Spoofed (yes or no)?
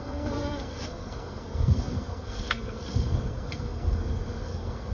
yes